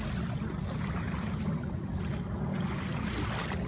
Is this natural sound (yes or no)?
yes